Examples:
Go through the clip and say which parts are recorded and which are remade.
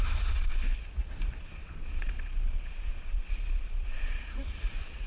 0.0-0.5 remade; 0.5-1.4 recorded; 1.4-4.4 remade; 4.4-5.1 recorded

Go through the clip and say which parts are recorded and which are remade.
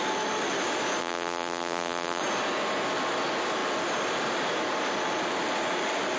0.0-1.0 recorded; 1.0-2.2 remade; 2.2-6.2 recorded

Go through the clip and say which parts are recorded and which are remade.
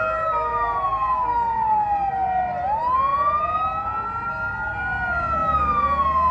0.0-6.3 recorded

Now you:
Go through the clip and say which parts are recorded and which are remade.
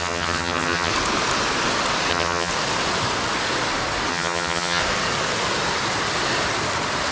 0.0-0.9 remade; 0.9-2.1 recorded; 2.1-2.5 remade; 2.5-4.1 recorded; 4.1-4.8 remade; 4.8-7.1 recorded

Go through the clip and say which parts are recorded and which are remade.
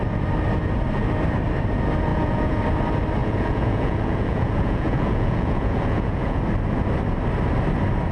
0.0-2.1 recorded; 2.1-2.6 remade; 2.6-3.2 recorded; 3.2-6.4 remade; 6.4-8.1 recorded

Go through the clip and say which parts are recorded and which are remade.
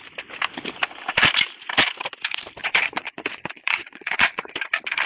0.0-2.6 recorded; 2.6-4.5 remade; 4.5-5.1 recorded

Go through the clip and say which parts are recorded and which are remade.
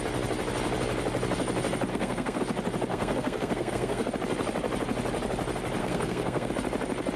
0.0-1.9 recorded; 1.9-2.4 remade; 2.4-2.9 recorded; 2.9-4.1 remade; 4.1-5.8 recorded; 5.8-6.5 remade; 6.5-7.2 recorded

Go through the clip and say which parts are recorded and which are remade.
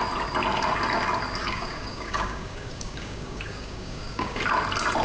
0.0-1.4 recorded; 1.4-4.4 remade; 4.4-5.0 recorded